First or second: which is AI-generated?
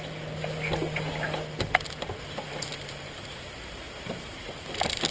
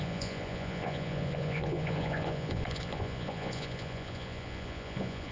second